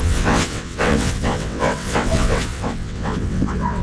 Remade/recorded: remade